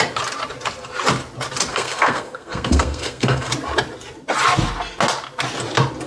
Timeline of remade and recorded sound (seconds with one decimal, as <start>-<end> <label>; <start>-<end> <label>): 0.0-1.7 recorded; 1.7-3.5 remade; 3.5-6.1 recorded